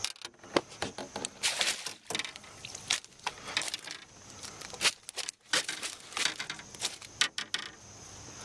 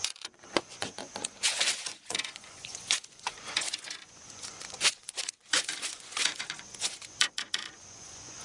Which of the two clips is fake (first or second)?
second